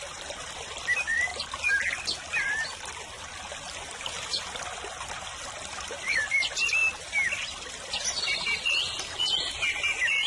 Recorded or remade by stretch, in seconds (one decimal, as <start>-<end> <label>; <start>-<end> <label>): 0.0-1.3 remade; 1.3-4.0 recorded; 4.0-10.3 remade